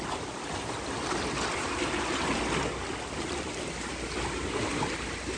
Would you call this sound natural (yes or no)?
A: yes